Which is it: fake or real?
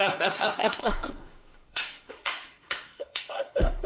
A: fake